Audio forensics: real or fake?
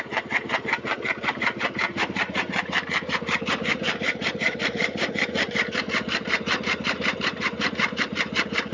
fake